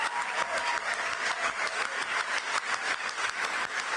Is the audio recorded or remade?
remade